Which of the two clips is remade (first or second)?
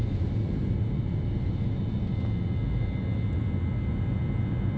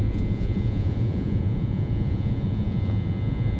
second